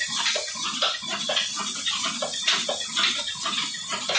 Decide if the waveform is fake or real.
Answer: real